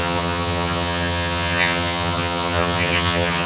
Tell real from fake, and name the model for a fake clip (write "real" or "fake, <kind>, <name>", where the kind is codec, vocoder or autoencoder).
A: fake, vocoder, HiFi-GAN